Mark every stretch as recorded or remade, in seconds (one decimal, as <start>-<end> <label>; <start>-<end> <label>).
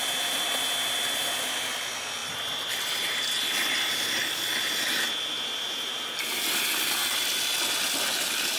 0.0-8.6 recorded